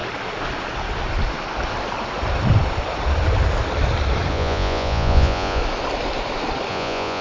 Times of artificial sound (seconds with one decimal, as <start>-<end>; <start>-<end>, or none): 4.3-5.6; 6.7-7.2